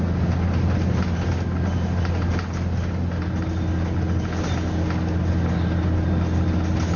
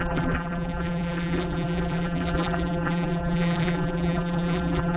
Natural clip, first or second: first